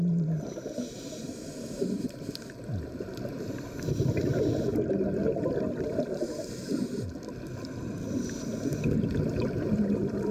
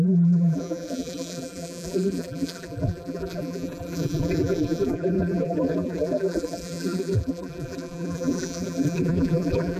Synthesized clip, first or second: second